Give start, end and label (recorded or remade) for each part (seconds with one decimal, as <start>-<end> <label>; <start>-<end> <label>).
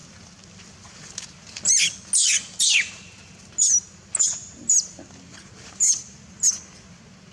0.0-7.3 recorded